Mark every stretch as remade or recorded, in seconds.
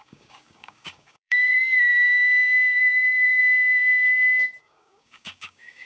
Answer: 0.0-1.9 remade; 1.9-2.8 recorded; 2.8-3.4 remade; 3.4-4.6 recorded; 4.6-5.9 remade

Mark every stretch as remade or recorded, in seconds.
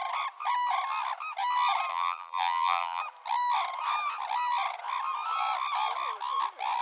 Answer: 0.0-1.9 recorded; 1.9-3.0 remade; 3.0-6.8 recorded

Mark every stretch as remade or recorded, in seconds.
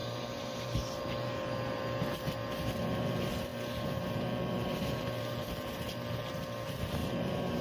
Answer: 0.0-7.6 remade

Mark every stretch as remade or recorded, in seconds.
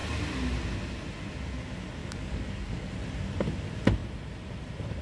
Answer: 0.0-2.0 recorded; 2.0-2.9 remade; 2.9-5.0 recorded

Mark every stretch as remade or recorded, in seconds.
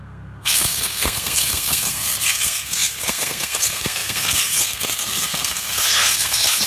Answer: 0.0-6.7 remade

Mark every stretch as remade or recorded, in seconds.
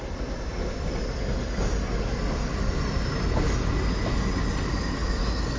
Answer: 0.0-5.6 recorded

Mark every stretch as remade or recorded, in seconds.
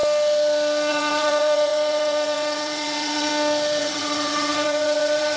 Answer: 0.0-0.9 recorded; 0.9-3.3 remade; 3.3-3.8 recorded; 3.8-5.4 remade